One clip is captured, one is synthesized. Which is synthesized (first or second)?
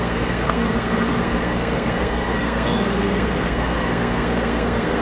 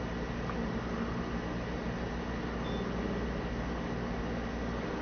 first